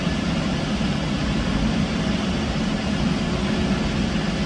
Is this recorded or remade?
recorded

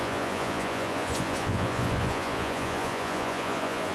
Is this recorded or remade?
remade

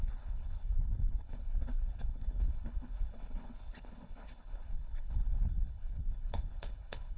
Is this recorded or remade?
remade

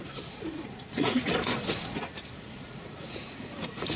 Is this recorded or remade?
remade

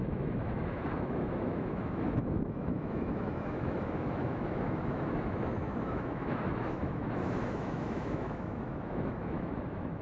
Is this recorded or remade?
remade